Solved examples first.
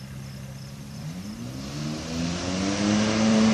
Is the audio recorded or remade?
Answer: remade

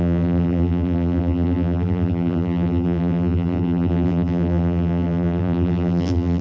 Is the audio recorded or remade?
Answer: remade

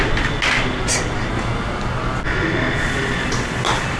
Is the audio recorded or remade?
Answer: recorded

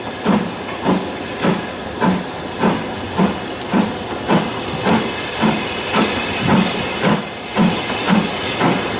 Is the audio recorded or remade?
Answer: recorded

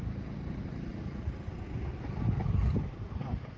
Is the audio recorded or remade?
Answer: remade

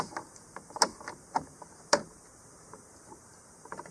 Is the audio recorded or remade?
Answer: remade